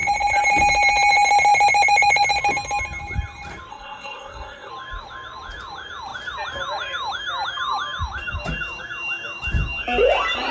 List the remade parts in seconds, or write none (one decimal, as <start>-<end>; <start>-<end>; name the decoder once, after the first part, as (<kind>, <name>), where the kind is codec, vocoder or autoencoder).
3.7-4.7 (codec, SNAC)